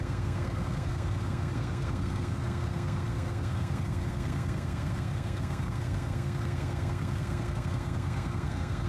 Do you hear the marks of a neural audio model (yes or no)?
yes